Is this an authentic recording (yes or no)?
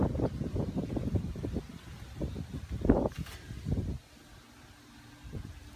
yes